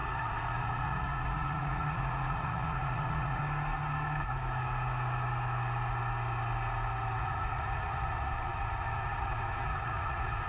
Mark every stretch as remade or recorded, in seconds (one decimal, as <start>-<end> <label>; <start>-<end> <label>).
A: 0.0-3.4 remade; 3.4-7.2 recorded; 7.2-10.5 remade